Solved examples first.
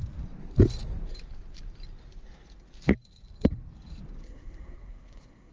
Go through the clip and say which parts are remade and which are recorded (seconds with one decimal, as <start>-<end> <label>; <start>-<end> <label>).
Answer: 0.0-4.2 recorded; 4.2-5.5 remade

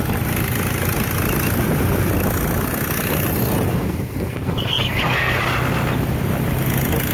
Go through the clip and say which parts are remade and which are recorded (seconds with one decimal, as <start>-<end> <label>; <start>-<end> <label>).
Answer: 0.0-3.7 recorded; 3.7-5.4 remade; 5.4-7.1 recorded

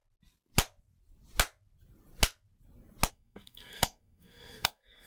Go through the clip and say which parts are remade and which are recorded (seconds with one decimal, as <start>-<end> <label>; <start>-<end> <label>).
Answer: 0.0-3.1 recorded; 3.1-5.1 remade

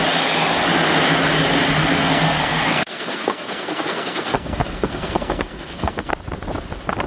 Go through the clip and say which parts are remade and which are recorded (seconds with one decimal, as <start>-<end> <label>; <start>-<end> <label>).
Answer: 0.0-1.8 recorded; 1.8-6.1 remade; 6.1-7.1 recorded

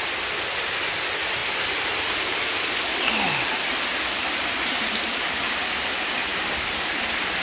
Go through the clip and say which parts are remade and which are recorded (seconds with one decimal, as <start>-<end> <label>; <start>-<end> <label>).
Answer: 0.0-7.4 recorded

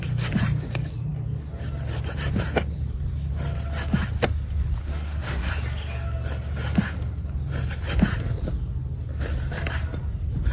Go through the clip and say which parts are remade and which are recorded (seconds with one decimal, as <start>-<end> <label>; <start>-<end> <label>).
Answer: 0.0-4.8 recorded; 4.8-5.5 remade; 5.5-10.5 recorded

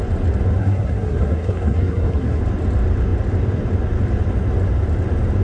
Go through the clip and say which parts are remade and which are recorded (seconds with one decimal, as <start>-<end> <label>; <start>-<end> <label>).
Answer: 0.0-0.6 recorded; 0.6-2.4 remade; 2.4-5.4 recorded

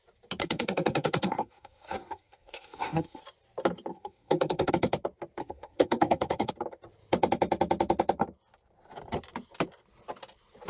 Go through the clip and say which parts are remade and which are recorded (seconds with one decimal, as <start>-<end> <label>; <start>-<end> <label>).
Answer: 0.0-0.4 recorded; 0.4-3.2 remade; 3.2-3.9 recorded; 3.9-4.7 remade; 4.7-5.4 recorded; 5.4-6.5 remade; 6.5-10.7 recorded